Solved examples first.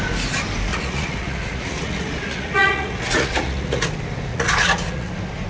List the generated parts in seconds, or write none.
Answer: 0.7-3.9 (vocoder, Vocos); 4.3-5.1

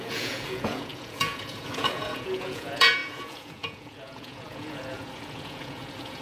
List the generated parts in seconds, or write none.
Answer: 0.0-6.2 (vocoder, Vocos)

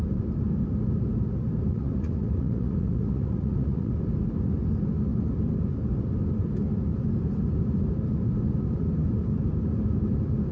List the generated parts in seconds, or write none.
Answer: 1.7-3.9 (vocoder, Vocos)

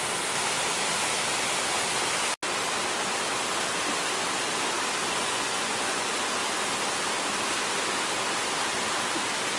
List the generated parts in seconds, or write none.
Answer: 5.0-6.1 (vocoder, Vocos)